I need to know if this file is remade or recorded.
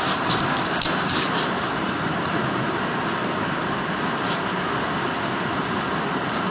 remade